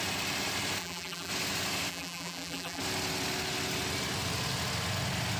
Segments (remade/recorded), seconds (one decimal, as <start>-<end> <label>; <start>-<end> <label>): 0.0-0.8 recorded; 0.8-1.3 remade; 1.3-1.9 recorded; 1.9-2.8 remade; 2.8-5.4 recorded